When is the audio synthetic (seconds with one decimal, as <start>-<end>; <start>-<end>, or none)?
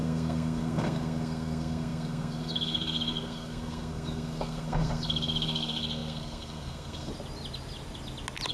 0.0-7.1